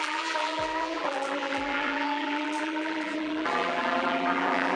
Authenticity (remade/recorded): remade